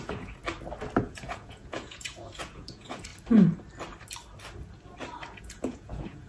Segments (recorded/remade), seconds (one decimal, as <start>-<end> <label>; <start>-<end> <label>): 0.0-0.4 remade; 0.4-1.0 recorded; 1.0-3.1 remade; 3.1-5.4 recorded; 5.4-6.3 remade